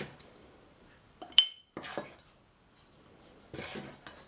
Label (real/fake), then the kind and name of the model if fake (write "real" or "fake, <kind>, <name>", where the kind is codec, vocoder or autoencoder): real